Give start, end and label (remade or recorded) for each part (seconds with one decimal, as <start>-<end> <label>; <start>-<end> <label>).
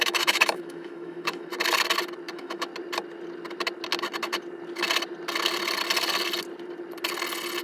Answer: 0.0-1.5 remade; 1.5-2.3 recorded; 2.3-2.7 remade; 2.7-7.6 recorded